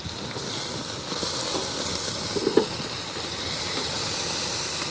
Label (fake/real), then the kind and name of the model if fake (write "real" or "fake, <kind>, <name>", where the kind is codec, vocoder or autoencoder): fake, vocoder, BigVGAN v2